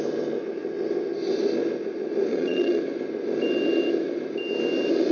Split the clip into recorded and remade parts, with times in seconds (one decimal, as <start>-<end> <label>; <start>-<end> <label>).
0.0-2.3 recorded; 2.3-2.8 remade; 2.8-5.1 recorded